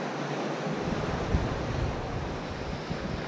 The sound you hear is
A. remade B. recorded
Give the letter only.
B